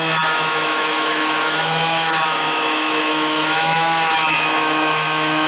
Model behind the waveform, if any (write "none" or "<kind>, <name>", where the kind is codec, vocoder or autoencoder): autoencoder, DAC-VAE